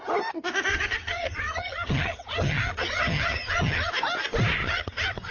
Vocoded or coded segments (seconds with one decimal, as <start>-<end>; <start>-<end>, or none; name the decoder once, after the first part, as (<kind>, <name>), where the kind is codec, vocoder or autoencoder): 0.7-3.9 (vocoder, HiFi-GAN); 4.6-5.3

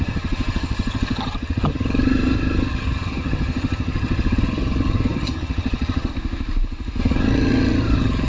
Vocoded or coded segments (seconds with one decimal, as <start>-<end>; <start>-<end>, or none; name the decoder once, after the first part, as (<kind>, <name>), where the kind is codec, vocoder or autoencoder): 0.0-6.1 (vocoder, HiFi-GAN); 7.0-8.3

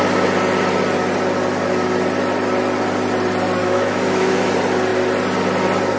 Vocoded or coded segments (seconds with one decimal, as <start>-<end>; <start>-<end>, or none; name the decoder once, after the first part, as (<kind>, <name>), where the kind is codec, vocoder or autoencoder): 3.6-4.5 (autoencoder, DAC-VAE)